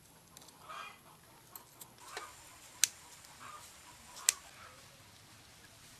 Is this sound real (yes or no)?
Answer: yes